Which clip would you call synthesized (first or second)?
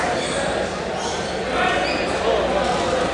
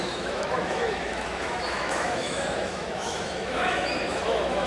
second